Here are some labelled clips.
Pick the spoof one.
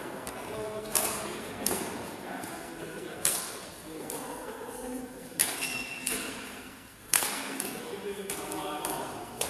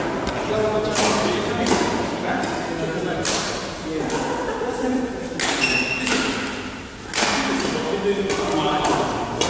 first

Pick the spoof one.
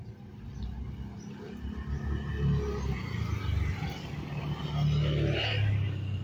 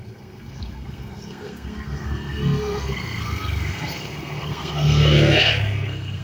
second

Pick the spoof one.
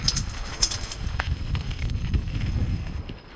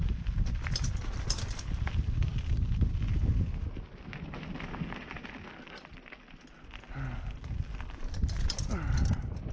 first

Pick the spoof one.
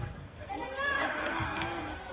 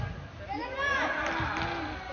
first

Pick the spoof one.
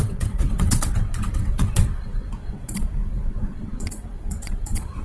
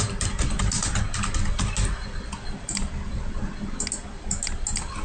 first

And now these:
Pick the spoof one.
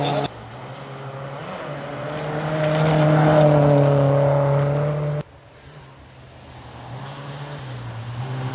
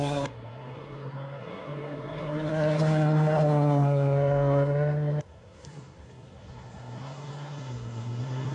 second